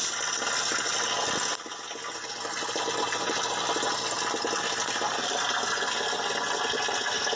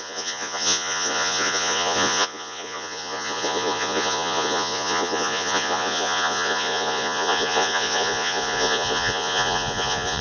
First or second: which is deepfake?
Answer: second